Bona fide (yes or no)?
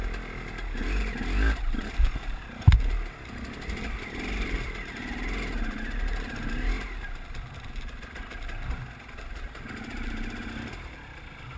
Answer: yes